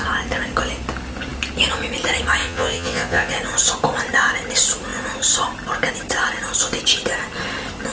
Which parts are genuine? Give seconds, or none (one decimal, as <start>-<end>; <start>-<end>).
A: 0.0-2.4; 3.3-7.9

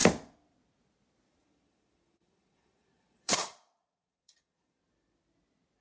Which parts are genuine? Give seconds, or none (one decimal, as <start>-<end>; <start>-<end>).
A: 0.0-1.3; 4.8-5.8

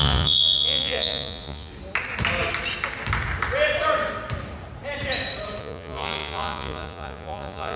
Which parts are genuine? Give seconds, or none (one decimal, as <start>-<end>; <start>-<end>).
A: 1.7-5.6

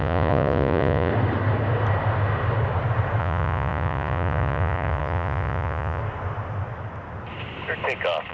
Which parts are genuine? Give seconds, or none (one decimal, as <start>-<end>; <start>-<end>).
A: 1.1-3.2; 6.0-8.3

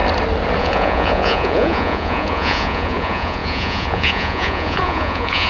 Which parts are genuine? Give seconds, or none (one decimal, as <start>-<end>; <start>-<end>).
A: 0.0-0.6